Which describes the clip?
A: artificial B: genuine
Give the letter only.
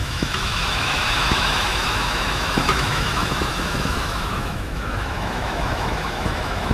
A